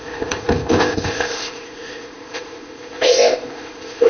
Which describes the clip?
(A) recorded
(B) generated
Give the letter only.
B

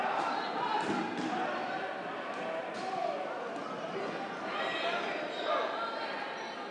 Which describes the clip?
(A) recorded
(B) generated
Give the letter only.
A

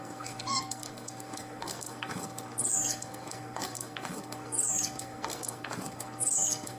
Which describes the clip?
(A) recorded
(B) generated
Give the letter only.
B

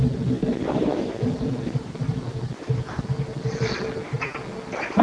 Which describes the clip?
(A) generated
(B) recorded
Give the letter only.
B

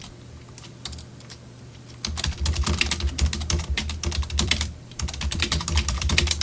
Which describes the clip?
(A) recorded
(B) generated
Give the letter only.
B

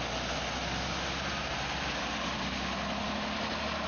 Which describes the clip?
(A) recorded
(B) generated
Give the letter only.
A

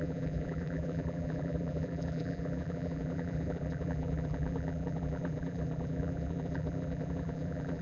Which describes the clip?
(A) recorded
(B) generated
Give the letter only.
B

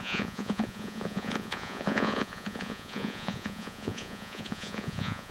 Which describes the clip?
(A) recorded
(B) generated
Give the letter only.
B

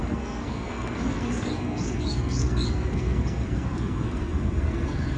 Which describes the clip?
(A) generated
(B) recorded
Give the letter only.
A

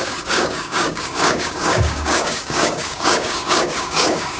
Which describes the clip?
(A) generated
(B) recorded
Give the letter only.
A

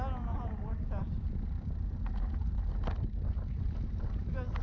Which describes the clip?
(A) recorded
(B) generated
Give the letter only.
A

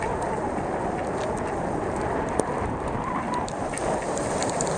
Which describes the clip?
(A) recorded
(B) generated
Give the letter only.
A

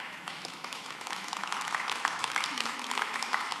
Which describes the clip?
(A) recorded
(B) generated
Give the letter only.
B